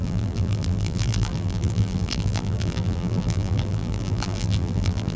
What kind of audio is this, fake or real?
fake